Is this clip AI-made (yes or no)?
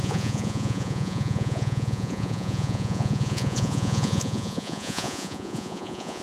yes